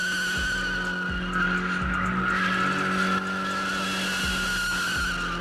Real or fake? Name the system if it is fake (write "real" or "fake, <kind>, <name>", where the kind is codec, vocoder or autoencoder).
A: real